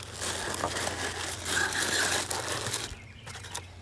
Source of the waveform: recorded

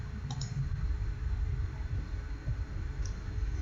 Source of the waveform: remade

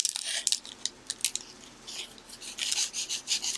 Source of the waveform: recorded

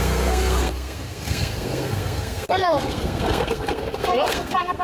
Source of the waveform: remade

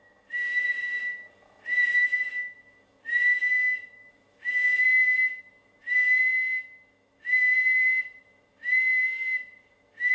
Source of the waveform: remade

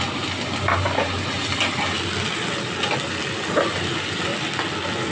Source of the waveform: recorded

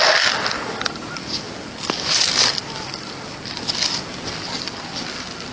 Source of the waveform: remade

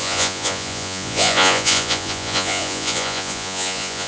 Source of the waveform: remade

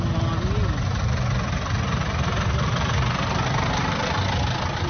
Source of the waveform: recorded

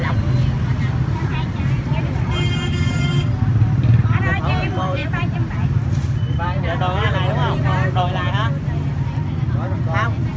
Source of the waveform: recorded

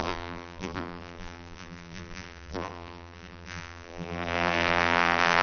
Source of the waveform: remade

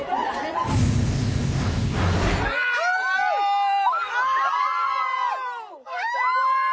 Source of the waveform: recorded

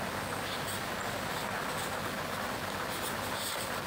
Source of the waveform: recorded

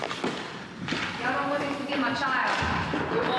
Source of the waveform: remade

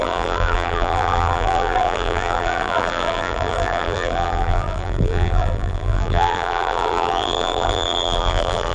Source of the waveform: remade